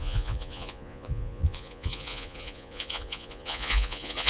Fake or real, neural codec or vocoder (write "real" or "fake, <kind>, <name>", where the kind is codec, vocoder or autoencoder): fake, vocoder, Vocos